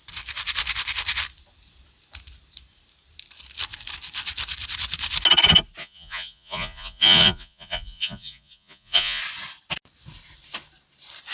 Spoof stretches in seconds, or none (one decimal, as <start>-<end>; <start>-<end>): 5.8-9.2